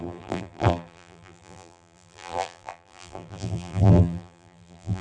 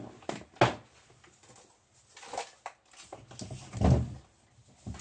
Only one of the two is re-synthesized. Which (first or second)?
first